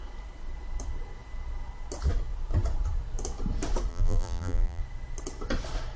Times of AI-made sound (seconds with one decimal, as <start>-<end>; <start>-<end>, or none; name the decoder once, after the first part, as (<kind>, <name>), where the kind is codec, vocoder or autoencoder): 3.9-4.8 (vocoder, BigVGAN v2)